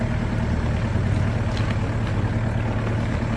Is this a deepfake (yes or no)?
no